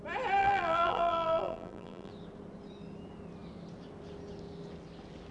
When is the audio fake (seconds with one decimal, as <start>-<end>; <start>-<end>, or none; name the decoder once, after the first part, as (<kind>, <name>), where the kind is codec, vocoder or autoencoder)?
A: 0.4-2.1 (vocoder, BigVGAN v2)